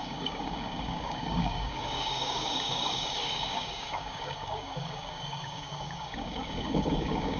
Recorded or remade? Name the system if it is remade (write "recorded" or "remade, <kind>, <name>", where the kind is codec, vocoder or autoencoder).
remade, codec, DAC